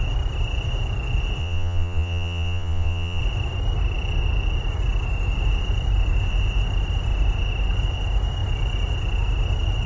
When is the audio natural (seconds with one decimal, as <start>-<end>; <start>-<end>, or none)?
0.0-1.4; 3.2-9.9